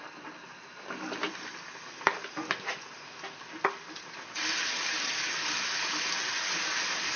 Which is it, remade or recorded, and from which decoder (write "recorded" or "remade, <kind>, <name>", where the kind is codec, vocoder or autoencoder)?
recorded